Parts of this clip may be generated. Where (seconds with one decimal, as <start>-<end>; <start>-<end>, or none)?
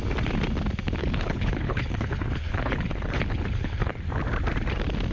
1.0-4.1